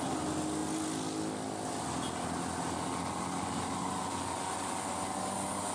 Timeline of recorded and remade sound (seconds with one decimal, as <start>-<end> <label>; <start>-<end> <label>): 0.0-5.7 recorded